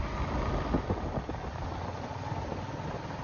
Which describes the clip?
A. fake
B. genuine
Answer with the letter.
B